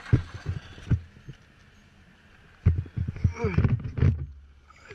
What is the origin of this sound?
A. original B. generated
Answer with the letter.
A